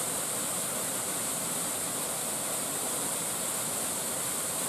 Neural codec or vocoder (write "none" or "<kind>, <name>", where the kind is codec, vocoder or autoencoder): none